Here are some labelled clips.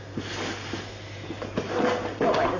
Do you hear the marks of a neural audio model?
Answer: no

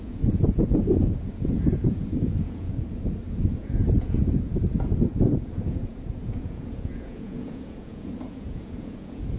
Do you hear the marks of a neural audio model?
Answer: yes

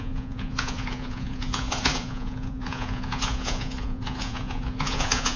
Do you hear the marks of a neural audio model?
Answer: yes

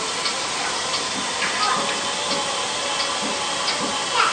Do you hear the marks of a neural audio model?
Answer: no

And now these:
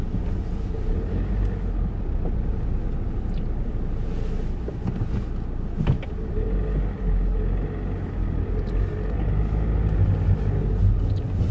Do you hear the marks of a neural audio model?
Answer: no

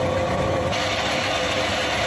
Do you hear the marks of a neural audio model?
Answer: no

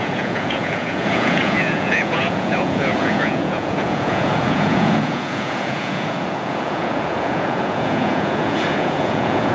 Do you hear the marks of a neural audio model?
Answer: yes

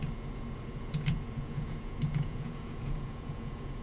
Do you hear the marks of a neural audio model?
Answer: yes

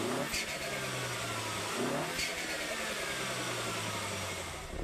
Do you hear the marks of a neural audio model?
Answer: no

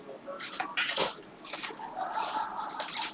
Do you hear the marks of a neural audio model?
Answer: no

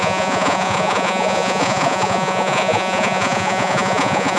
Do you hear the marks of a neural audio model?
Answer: yes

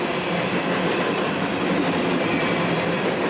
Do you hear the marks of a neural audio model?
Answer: no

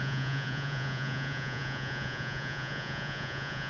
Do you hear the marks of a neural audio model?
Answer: yes